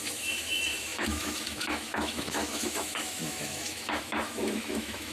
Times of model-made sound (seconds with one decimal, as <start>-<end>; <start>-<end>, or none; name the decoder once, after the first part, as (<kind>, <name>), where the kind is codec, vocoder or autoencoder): 0.0-5.1 (autoencoder, DAC-VAE)

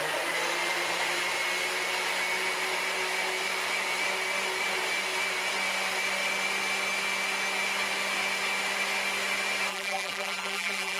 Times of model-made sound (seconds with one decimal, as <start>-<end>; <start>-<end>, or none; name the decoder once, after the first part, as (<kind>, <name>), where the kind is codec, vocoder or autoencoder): 9.7-11.0 (vocoder, BigVGAN v2)